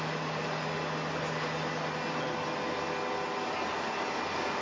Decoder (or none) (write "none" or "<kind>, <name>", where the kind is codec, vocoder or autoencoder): none